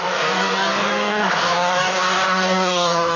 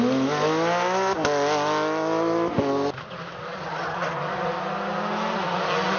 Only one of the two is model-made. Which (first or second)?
first